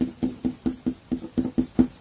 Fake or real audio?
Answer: real